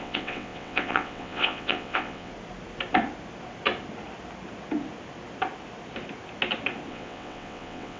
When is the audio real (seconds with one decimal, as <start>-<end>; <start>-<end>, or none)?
2.3-6.9